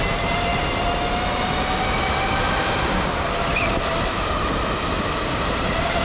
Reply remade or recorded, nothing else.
recorded